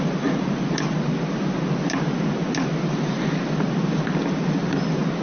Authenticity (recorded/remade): recorded